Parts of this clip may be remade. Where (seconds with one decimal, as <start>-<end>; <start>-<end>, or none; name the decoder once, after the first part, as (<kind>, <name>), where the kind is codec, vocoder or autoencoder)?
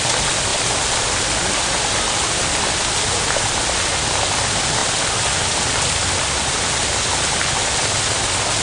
none